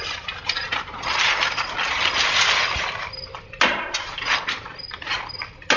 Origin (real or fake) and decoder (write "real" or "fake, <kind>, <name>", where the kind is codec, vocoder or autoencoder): real